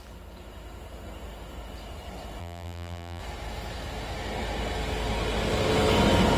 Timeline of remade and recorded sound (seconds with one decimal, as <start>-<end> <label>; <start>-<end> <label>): 0.0-2.4 recorded; 2.4-3.2 remade; 3.2-6.4 recorded